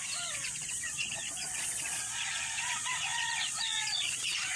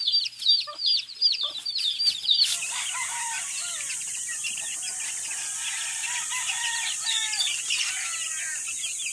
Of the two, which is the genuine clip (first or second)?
second